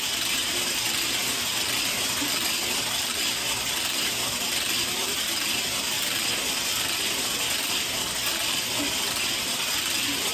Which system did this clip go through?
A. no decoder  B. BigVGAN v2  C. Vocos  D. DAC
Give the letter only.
A